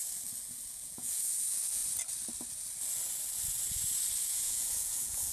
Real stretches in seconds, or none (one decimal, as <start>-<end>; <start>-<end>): 0.0-0.7; 1.8-4.2